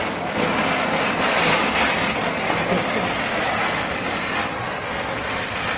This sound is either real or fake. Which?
real